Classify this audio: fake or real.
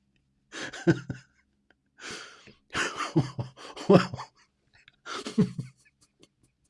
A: real